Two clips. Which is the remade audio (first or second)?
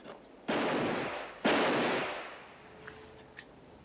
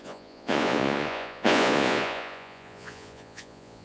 second